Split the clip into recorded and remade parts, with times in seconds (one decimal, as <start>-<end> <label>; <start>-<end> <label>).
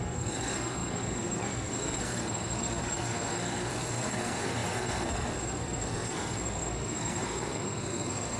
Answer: 0.0-8.4 remade